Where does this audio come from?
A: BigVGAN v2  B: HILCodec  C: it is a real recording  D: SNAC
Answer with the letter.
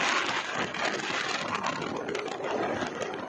C